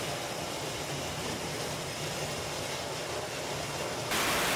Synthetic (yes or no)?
no